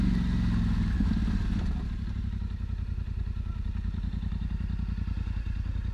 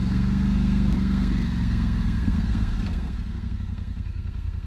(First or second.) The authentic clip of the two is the first